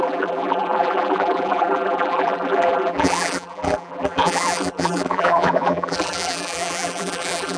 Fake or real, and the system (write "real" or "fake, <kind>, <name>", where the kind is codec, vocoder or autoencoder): fake, vocoder, BigVGAN v2